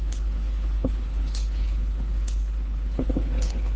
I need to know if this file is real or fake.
fake